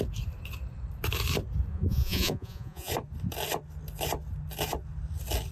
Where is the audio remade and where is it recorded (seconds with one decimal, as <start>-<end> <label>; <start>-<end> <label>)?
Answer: 0.0-1.7 recorded; 1.7-2.9 remade; 2.9-5.5 recorded